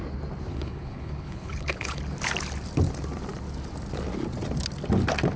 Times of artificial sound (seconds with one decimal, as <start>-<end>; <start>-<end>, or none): 0.5-2.0

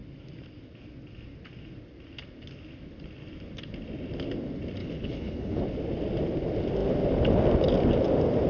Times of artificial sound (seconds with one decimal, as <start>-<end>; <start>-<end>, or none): 4.8-5.6

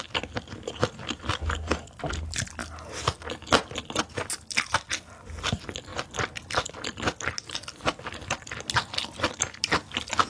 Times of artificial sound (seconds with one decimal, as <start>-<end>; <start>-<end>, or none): none

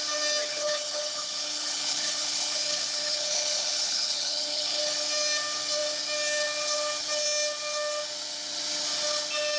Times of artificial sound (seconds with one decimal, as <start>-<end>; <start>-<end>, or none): 0.5-4.8

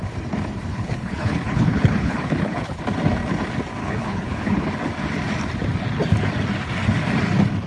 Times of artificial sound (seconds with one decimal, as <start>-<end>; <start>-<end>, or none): 0.7-2.8; 3.8-4.7

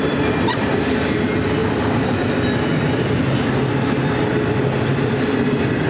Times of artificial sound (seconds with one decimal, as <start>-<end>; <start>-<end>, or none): none